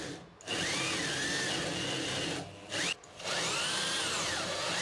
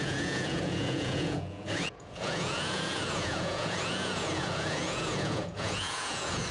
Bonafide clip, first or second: first